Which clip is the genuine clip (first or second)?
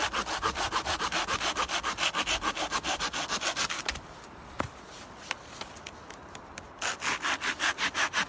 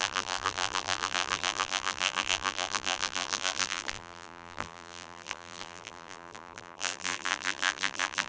first